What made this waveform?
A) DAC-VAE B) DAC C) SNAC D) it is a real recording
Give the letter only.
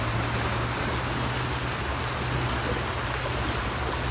D